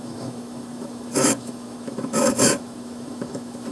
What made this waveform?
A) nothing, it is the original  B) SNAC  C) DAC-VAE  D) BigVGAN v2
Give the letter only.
C